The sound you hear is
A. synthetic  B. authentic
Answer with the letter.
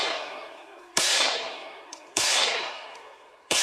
A